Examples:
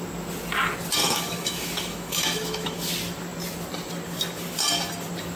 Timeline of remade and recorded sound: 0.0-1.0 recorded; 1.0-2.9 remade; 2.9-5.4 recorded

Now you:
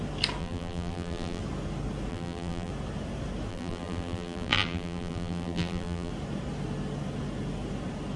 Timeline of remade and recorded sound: 0.0-0.4 recorded; 0.4-1.4 remade; 1.4-2.1 recorded; 2.1-2.7 remade; 2.7-3.5 recorded; 3.5-6.1 remade; 6.1-8.2 recorded